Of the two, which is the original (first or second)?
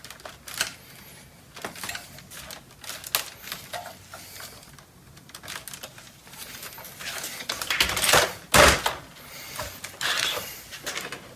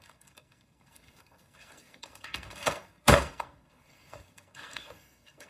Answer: first